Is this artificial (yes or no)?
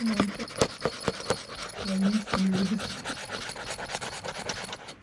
no